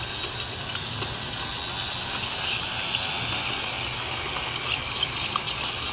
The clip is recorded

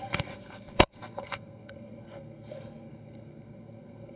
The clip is remade